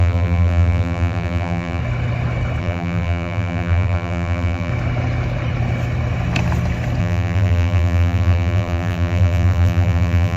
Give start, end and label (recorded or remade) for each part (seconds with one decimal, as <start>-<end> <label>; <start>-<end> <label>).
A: 0.0-1.8 remade; 1.8-2.6 recorded; 2.6-4.7 remade; 4.7-7.0 recorded; 7.0-10.4 remade